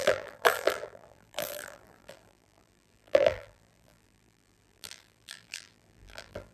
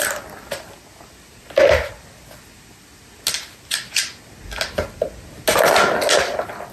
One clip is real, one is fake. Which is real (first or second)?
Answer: second